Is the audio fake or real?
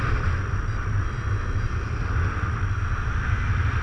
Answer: fake